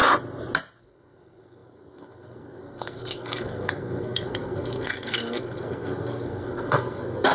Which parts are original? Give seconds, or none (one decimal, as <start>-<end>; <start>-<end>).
0.0-0.8